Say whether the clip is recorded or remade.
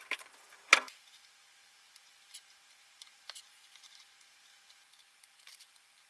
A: remade